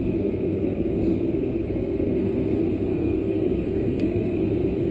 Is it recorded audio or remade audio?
remade